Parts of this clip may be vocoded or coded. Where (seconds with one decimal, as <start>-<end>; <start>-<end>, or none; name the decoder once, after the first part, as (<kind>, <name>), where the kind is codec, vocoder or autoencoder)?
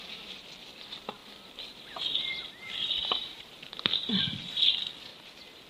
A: 1.2-4.2 (vocoder, BigVGAN v2); 5.1-5.7